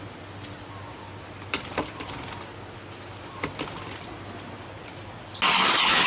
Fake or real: real